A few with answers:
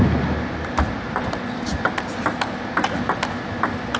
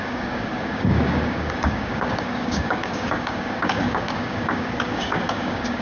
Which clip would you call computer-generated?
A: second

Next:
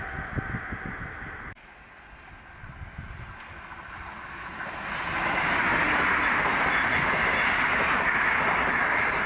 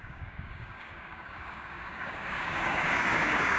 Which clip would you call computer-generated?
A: second